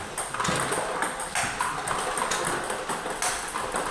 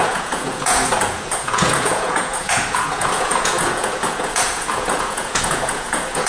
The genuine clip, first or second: first